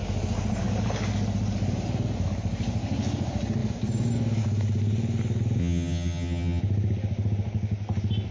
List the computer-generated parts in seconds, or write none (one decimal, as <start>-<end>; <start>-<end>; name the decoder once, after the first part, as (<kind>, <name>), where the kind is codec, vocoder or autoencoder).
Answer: 5.6-6.6 (vocoder, HiFi-GAN)